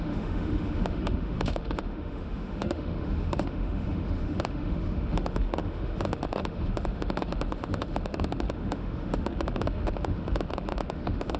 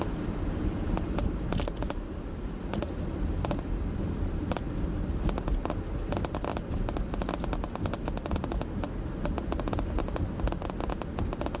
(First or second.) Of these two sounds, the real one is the second